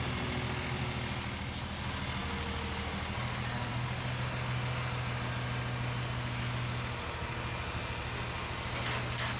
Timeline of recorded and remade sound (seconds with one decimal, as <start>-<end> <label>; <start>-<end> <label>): 0.0-9.4 recorded